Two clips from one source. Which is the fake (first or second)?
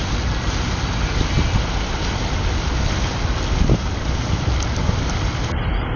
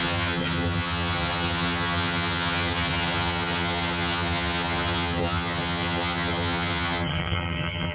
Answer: second